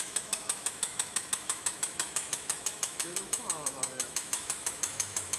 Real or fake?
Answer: fake